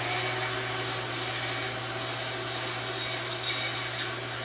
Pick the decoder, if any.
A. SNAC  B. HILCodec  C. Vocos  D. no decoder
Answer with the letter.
D